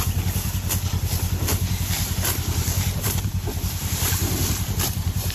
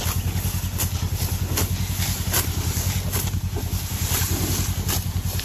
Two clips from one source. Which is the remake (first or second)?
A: first